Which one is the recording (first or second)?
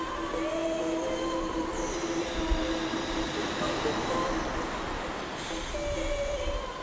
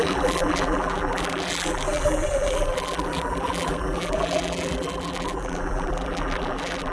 first